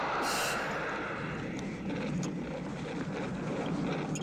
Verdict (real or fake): real